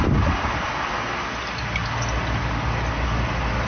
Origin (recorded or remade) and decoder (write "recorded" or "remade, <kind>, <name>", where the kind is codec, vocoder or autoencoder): recorded